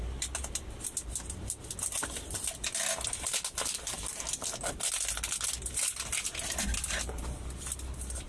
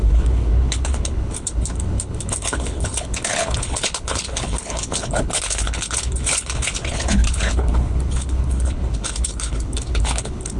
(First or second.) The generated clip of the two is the second